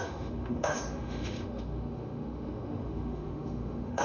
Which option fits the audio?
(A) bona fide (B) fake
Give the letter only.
B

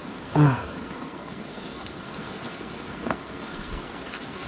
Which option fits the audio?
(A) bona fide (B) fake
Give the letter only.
B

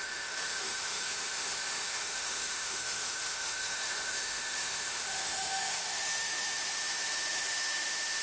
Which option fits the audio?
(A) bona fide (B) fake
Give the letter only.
B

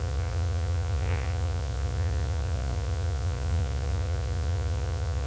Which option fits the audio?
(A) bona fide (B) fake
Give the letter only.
B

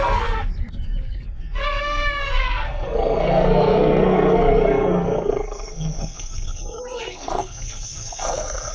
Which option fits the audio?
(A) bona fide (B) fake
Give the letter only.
B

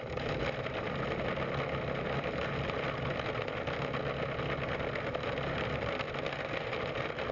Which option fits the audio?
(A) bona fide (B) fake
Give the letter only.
A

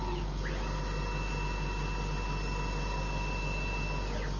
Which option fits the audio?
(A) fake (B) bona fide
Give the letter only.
B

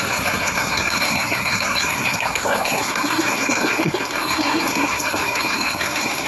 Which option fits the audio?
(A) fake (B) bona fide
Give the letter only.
A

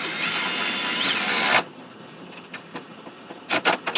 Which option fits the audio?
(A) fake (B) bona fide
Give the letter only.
B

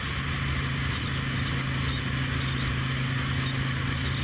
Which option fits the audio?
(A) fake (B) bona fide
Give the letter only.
B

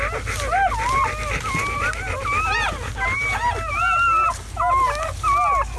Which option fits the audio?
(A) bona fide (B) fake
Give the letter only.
A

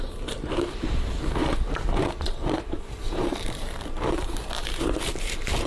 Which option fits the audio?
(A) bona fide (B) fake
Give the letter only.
B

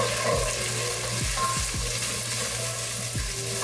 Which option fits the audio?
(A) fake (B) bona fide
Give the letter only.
B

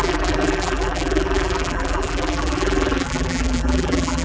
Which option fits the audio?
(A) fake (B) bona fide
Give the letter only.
A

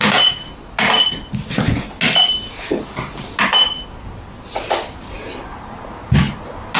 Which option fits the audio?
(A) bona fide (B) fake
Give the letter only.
A